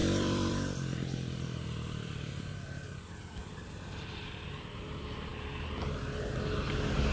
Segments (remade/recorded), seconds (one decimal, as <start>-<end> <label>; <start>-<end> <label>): 0.0-4.3 remade; 4.3-7.1 recorded